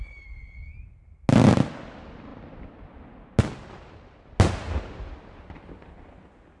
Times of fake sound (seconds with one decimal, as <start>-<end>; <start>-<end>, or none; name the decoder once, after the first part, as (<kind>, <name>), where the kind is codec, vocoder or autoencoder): none